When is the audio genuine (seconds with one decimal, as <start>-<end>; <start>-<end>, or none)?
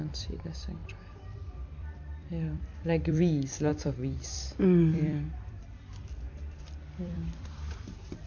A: none